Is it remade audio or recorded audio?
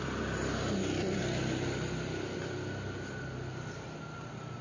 recorded